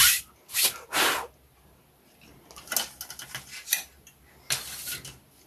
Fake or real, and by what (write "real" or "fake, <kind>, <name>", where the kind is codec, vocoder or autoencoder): real